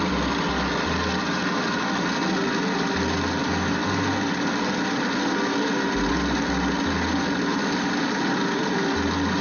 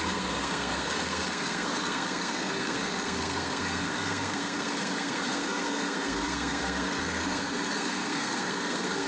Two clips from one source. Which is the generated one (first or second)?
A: second